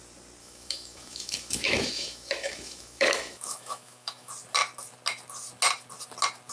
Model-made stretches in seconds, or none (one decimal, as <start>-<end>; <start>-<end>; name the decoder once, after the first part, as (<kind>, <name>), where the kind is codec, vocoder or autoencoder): 0.4-4.3 (autoencoder, DAC-VAE)